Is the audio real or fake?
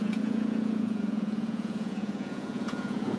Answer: fake